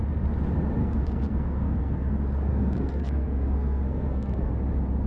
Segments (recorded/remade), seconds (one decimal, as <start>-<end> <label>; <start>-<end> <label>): 0.0-0.8 recorded; 0.8-2.1 remade; 2.1-2.5 recorded; 2.5-4.5 remade; 4.5-5.1 recorded